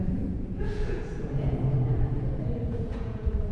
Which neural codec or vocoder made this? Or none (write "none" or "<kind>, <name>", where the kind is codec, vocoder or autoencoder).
vocoder, Vocos